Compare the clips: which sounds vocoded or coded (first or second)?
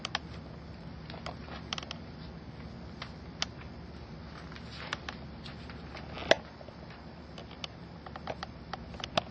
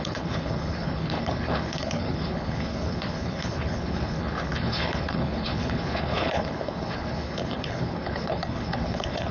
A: second